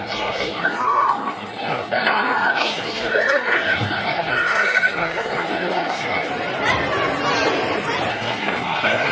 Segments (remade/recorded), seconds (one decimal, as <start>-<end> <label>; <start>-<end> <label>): 0.0-6.3 remade; 6.3-8.1 recorded; 8.1-9.1 remade